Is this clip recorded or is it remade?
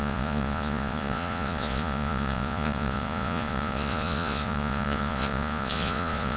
remade